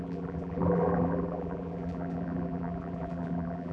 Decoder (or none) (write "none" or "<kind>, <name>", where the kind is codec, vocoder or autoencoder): vocoder, BigVGAN v2